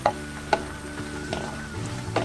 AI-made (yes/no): no